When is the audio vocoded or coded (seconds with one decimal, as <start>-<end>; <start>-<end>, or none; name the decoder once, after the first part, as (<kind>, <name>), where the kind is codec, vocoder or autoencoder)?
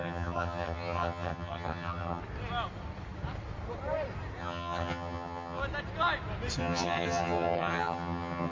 0.0-2.2 (vocoder, HiFi-GAN); 4.4-5.6; 6.6-8.5